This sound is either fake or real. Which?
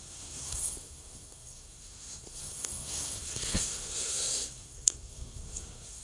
fake